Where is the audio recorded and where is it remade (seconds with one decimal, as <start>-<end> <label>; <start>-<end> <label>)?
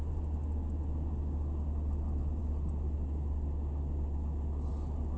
0.0-5.2 recorded